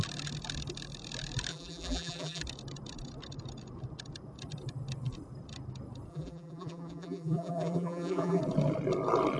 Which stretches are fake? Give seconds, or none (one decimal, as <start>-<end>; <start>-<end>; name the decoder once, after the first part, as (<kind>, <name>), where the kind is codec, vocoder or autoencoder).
1.5-2.4 (vocoder, BigVGAN v2); 6.1-8.4